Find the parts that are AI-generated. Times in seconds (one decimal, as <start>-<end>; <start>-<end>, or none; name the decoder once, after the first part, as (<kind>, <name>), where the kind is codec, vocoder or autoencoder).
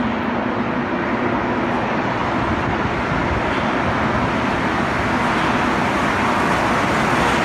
2.2-2.8 (vocoder, BigVGAN v2); 3.2-3.9